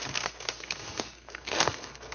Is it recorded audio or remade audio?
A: remade